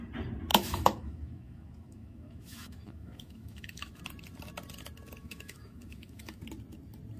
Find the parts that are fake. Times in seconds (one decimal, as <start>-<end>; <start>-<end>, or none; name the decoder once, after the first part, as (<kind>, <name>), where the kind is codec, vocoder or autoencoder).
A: 0.5-4.0 (autoencoder, DAC-VAE); 5.2-6.4